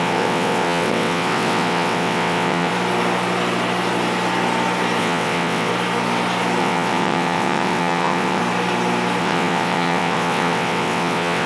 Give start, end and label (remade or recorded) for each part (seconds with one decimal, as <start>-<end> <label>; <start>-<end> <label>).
0.0-2.7 remade; 2.7-5.0 recorded; 5.0-5.7 remade; 5.7-6.6 recorded; 6.6-8.4 remade; 8.4-9.2 recorded; 9.2-11.5 remade